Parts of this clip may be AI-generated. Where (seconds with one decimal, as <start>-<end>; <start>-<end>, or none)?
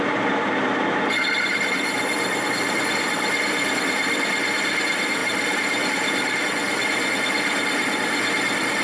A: 5.2-6.4